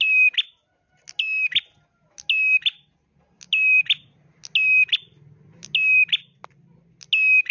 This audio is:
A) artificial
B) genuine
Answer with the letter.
B